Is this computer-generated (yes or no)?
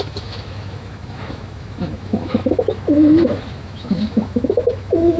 yes